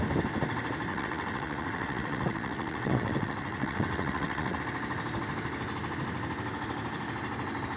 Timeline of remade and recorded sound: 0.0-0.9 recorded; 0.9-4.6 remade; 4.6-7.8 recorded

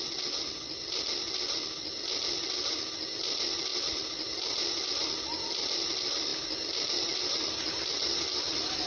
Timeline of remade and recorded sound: 0.0-8.9 recorded

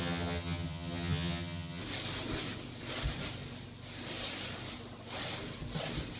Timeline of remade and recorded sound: 0.0-1.8 remade; 1.8-6.2 recorded

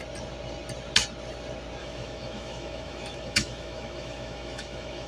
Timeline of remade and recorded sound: 0.0-1.8 recorded; 1.8-5.1 remade

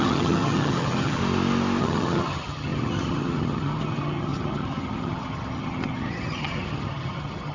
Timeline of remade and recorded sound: 0.0-1.2 remade; 1.2-1.8 recorded; 1.8-7.5 remade

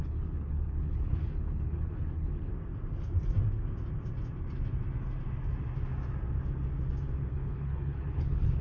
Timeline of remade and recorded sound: 0.0-2.5 remade; 2.5-7.3 recorded; 7.3-8.6 remade